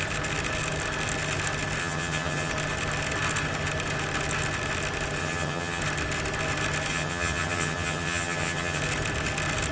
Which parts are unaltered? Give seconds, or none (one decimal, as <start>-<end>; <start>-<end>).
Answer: 0.0-1.8; 2.5-5.2; 5.8-6.9; 8.8-9.7